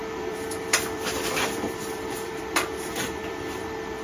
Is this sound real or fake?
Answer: fake